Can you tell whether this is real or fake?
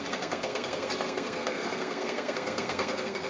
fake